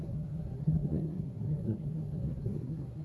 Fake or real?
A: fake